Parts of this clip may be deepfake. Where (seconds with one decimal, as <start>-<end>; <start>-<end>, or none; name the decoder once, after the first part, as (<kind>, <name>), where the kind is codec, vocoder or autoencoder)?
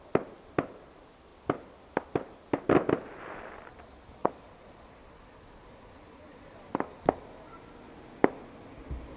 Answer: 4.2-6.7 (vocoder, Vocos)